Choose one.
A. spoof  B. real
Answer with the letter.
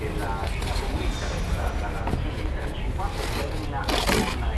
B